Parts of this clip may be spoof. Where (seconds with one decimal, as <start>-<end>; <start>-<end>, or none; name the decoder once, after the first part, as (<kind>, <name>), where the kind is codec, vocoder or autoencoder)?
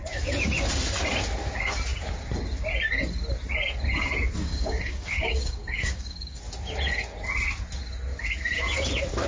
4.4-6.4 (codec, DAC)